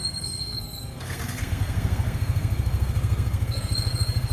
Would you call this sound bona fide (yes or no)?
no